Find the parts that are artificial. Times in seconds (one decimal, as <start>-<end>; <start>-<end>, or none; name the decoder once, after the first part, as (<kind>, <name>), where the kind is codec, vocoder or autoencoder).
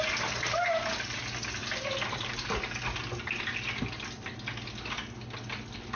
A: none